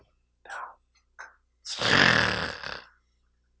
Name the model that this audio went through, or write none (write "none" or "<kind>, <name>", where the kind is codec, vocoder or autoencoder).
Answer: none